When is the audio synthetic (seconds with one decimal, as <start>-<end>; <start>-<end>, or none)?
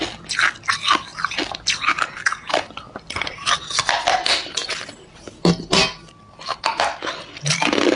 none